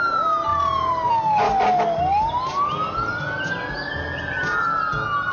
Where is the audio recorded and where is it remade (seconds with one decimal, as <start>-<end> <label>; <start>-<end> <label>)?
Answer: 0.0-0.5 recorded; 0.5-1.1 remade; 1.1-5.3 recorded